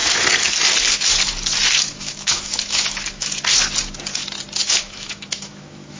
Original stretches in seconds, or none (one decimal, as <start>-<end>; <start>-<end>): 0.0-2.0; 3.4-4.6